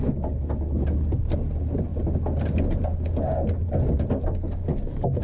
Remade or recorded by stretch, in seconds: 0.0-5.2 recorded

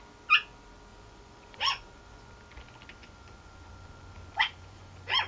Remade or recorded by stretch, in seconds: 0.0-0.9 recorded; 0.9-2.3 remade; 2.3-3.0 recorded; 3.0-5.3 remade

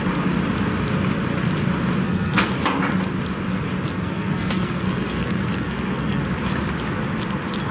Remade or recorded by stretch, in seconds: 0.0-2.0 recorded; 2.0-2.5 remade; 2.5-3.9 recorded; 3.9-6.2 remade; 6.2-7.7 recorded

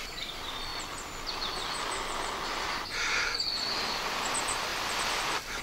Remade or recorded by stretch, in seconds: 0.0-5.6 recorded